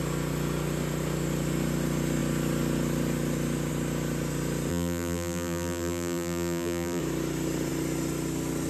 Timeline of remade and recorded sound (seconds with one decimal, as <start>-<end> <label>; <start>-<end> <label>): 0.0-4.7 recorded; 4.7-7.0 remade; 7.0-8.7 recorded